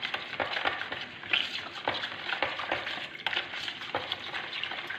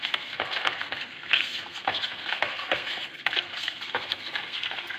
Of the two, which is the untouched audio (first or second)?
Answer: first